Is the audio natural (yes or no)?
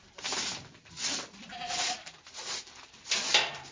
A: yes